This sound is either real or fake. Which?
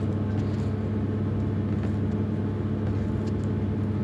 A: real